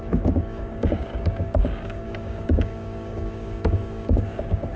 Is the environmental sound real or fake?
fake